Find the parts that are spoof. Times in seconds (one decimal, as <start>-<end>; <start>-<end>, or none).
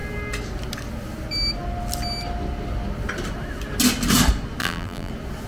4.6-5.1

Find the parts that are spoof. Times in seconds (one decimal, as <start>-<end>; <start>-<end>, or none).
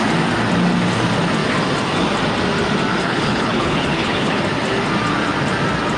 3.0-4.4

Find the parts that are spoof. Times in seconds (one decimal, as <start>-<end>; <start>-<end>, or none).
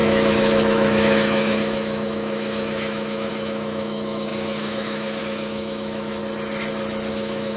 0.0-6.2; 7.1-7.6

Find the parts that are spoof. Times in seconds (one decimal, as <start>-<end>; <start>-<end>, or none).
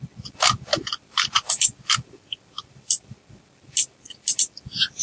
0.7-3.7